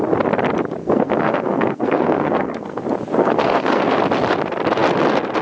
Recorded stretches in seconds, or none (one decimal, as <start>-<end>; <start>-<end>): 0.0-0.8; 2.8-3.2; 3.8-5.4